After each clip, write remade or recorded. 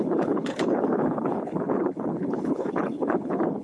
remade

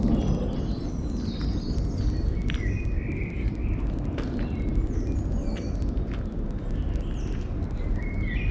recorded